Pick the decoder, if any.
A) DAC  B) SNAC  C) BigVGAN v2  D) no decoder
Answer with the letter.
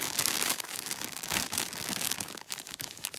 A